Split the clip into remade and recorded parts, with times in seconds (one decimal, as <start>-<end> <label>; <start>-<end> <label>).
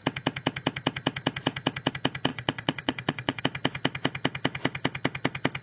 0.0-2.3 recorded; 2.3-3.4 remade; 3.4-5.6 recorded